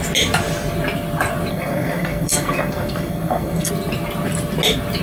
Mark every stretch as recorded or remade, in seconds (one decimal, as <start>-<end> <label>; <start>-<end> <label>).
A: 0.0-1.5 recorded; 1.5-3.7 remade; 3.7-5.0 recorded